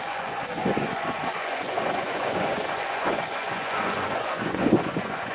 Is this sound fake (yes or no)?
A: yes